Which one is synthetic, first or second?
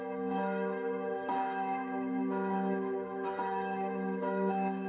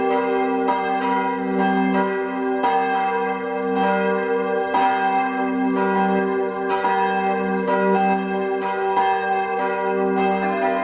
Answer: first